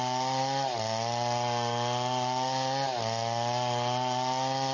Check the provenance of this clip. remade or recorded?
recorded